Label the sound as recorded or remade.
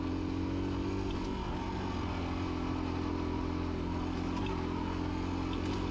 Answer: recorded